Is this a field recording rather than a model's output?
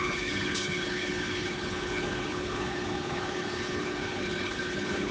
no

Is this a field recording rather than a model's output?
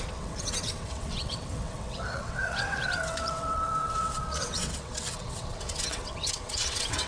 no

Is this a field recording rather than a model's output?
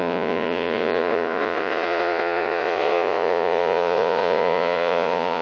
no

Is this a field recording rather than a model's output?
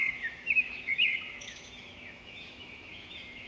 no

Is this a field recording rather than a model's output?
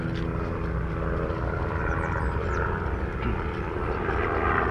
yes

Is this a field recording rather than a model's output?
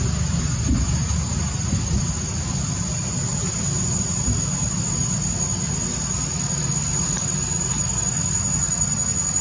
yes